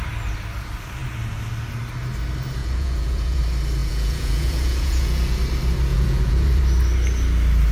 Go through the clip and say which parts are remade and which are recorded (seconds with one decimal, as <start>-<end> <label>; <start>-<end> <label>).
0.0-2.6 recorded; 2.6-3.4 remade; 3.4-3.8 recorded; 3.8-5.4 remade; 5.4-5.9 recorded; 5.9-6.6 remade; 6.6-7.7 recorded